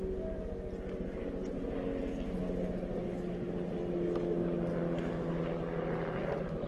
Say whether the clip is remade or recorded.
recorded